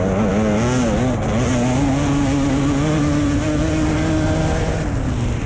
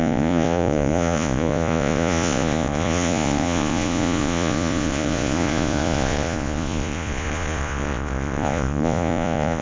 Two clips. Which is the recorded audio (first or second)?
first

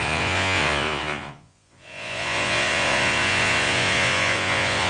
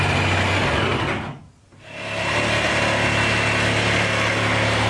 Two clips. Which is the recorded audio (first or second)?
second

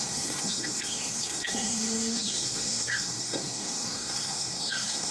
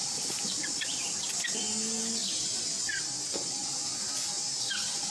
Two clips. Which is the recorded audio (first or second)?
second